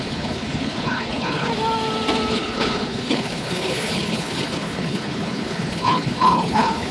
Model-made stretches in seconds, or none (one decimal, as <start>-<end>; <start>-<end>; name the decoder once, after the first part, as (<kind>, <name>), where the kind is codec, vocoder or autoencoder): 0.0-1.5 (codec, HILCodec); 2.3-6.9